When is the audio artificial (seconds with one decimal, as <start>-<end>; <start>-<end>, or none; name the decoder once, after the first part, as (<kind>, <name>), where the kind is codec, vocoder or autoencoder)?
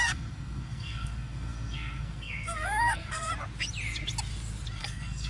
0.0-3.3 (codec, SNAC); 4.8-5.3